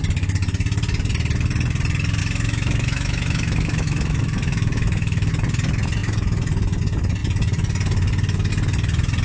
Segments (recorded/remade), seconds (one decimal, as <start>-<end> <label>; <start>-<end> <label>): 0.0-2.2 recorded; 2.2-5.3 remade; 5.3-9.2 recorded